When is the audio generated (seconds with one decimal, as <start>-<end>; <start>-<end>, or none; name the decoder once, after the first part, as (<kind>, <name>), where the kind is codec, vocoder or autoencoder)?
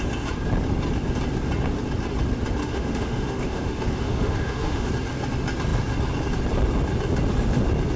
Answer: 2.6-4.9 (autoencoder, DAC-VAE)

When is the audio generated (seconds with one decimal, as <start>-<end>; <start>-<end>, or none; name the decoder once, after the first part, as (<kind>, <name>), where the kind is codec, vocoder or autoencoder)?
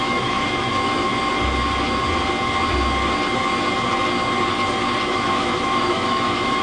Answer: 0.0-1.1 (autoencoder, DAC-VAE); 5.1-6.6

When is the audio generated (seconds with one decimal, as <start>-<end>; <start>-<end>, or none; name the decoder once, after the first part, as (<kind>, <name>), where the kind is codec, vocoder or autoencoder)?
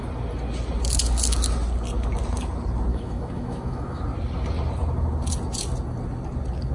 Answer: 2.9-4.0 (autoencoder, DAC-VAE)